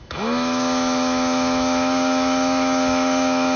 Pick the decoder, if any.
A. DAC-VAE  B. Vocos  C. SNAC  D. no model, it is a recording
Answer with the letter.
A